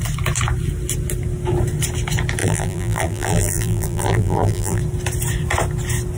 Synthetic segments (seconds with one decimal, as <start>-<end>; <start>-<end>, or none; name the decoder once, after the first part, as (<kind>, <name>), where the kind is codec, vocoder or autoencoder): 2.4-4.8 (vocoder, BigVGAN v2)